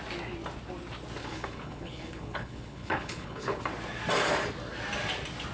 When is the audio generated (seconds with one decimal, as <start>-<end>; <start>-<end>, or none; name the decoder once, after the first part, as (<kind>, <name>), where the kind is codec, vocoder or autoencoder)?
1.2-3.6 (codec, HILCodec)